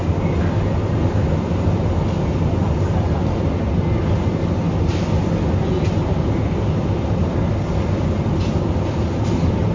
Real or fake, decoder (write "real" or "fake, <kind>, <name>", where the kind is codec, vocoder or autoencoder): real